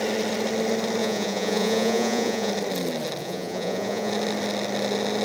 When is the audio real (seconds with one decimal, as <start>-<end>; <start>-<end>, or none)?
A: 0.0-1.0; 2.5-3.2; 4.1-5.2